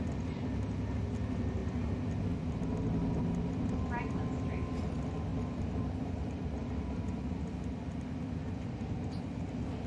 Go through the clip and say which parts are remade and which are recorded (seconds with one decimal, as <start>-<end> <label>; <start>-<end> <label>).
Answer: 0.0-5.3 recorded; 5.3-6.8 remade; 6.8-9.9 recorded